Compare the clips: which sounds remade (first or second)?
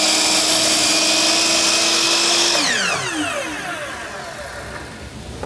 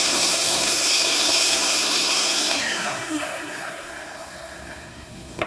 second